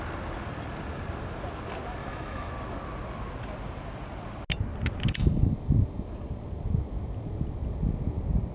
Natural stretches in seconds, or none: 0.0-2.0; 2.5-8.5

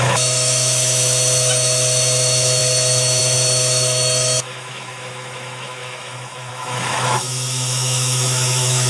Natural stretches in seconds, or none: none

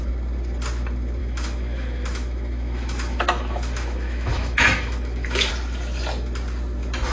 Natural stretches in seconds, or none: 0.0-1.2; 5.5-7.1

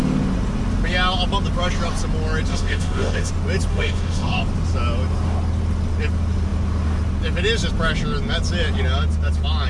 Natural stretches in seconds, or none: 0.0-2.5; 3.3-3.7; 4.4-9.7

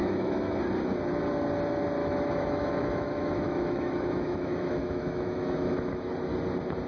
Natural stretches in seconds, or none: 0.6-2.0; 6.1-6.9

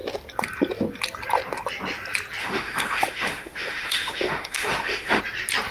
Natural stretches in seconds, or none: 0.0-2.4; 5.2-5.7

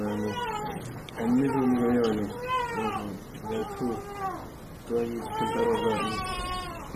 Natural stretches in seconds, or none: 0.0-7.0

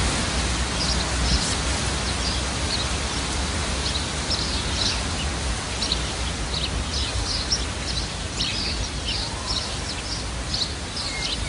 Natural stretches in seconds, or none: 0.0-11.5